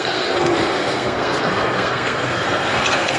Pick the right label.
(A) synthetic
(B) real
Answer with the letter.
A